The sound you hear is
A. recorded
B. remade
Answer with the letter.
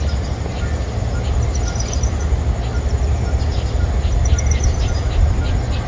A